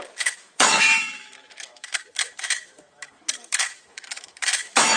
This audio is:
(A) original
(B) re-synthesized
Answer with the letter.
B